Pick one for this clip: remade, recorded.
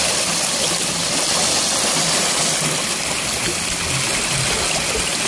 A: recorded